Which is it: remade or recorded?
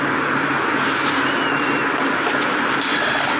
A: recorded